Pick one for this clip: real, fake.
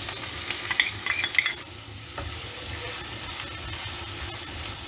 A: real